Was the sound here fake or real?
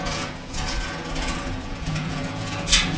fake